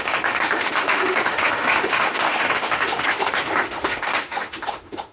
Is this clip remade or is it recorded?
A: remade